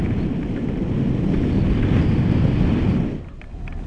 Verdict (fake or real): real